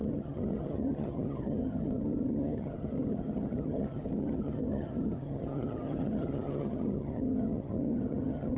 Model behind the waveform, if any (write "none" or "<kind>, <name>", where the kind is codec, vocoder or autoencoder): vocoder, HiFi-GAN